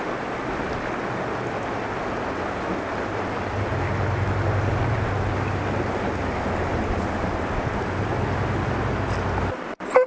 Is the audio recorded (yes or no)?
yes